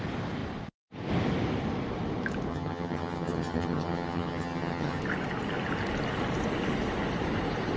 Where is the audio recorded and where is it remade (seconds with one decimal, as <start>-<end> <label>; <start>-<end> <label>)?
0.0-2.5 recorded; 2.5-5.0 remade; 5.0-7.8 recorded